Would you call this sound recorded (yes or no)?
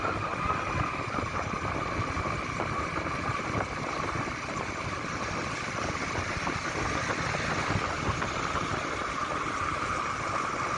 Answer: yes